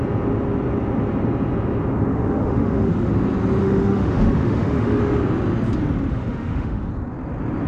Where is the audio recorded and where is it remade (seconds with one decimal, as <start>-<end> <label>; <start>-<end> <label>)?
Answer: 0.0-2.1 recorded; 2.1-3.1 remade; 3.1-3.6 recorded; 3.6-5.0 remade; 5.0-6.1 recorded; 6.1-6.9 remade; 6.9-7.7 recorded